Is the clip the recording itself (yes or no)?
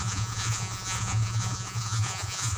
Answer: no